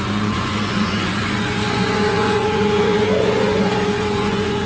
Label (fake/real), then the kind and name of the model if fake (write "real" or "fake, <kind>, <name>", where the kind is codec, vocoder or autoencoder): fake, vocoder, Vocos